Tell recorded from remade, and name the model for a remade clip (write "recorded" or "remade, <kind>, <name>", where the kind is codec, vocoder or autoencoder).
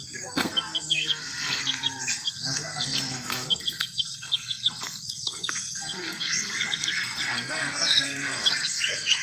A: remade, codec, SNAC